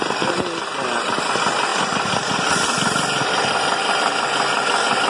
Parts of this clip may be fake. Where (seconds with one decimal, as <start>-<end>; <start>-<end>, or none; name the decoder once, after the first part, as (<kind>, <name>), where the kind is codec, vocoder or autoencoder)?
none